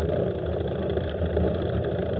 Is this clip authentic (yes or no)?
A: yes